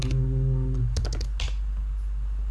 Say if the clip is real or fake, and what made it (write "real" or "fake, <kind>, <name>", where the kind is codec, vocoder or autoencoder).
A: real